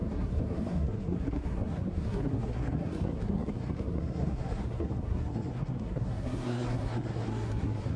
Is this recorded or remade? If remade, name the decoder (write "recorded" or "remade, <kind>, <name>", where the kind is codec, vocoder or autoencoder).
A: remade, codec, SNAC